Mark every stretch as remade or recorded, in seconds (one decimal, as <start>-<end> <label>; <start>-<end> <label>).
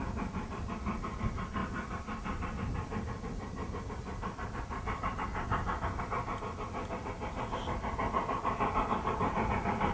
0.0-9.9 recorded